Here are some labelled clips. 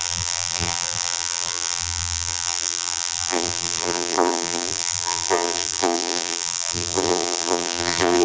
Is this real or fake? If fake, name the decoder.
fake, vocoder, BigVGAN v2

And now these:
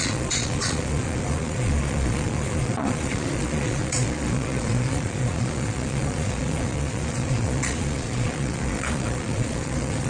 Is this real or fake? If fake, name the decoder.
fake, vocoder, Vocos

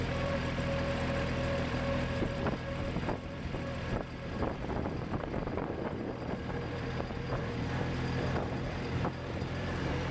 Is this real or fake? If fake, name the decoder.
fake, vocoder, BigVGAN v2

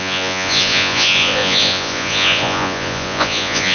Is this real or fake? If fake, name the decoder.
fake, vocoder, Vocos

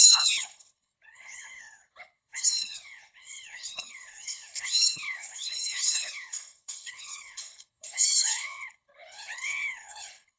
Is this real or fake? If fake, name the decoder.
fake, codec, HILCodec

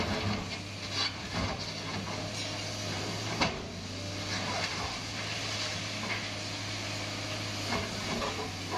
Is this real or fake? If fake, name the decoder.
real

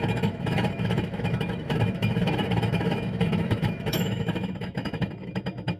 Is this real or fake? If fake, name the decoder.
fake, autoencoder, DAC-VAE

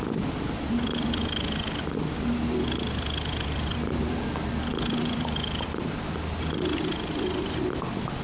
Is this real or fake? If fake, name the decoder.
fake, vocoder, BigVGAN v2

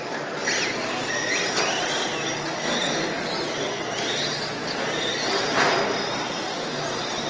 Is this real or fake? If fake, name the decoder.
real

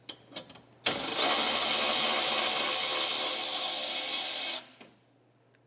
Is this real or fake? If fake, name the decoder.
real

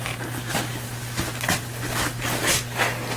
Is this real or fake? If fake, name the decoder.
real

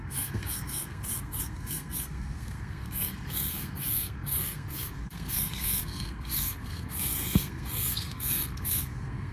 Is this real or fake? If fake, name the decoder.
fake, codec, SNAC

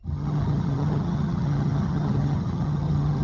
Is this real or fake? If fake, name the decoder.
fake, vocoder, HiFi-GAN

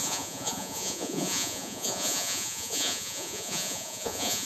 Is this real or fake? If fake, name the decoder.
fake, vocoder, Vocos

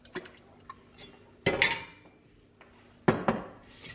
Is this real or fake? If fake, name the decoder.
real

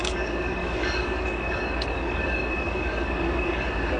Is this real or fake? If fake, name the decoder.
fake, codec, DAC